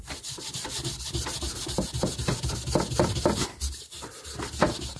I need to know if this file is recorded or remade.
recorded